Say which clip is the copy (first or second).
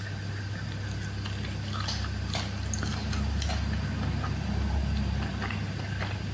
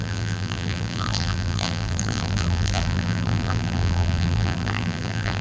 second